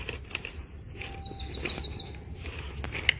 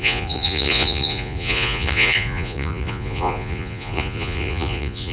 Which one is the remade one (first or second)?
second